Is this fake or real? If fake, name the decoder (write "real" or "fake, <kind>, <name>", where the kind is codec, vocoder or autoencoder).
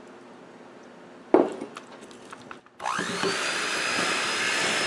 real